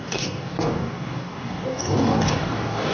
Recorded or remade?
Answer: remade